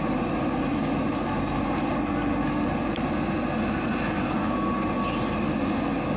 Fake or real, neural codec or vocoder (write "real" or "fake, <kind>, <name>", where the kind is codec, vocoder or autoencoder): real